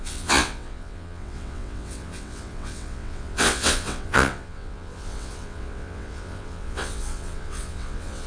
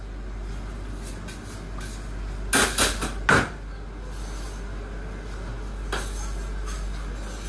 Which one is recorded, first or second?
second